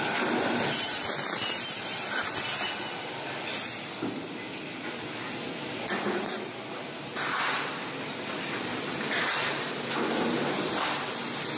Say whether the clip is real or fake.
real